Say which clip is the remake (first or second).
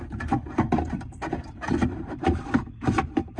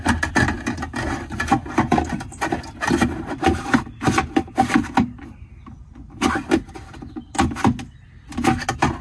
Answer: first